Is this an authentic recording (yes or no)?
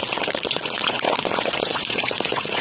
no